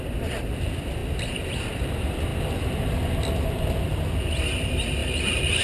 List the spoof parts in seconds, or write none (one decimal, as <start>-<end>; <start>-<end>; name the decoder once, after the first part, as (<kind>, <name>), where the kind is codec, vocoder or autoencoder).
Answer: 0.0-1.0 (vocoder, BigVGAN v2); 1.7-2.3; 4.0-5.0